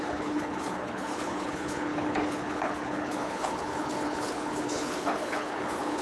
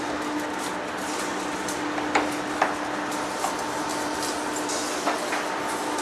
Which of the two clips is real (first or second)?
second